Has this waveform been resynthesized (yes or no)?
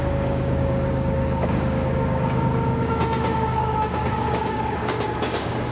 yes